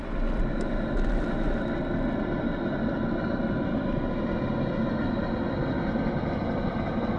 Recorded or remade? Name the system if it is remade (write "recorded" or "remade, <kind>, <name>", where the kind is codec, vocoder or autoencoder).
recorded